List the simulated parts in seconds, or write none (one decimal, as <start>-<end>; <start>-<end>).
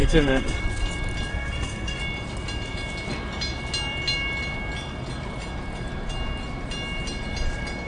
0.0-0.6; 1.3-2.0